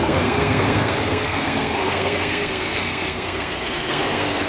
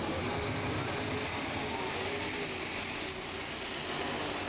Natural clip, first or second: second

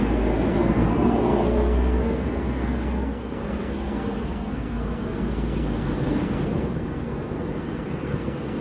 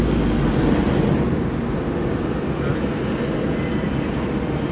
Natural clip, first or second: second